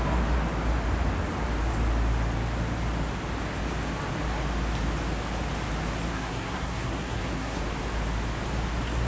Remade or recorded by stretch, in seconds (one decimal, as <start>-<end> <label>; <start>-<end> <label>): 0.0-6.1 recorded; 6.1-7.6 remade; 7.6-9.1 recorded